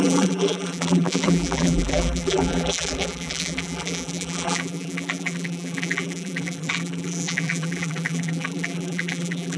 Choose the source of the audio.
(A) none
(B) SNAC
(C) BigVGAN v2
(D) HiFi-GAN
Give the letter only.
C